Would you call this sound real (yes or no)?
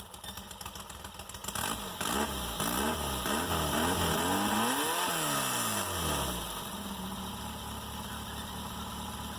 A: yes